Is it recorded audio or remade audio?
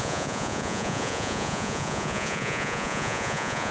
remade